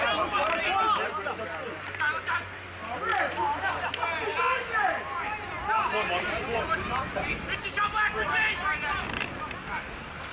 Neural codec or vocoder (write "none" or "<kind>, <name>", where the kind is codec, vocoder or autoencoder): none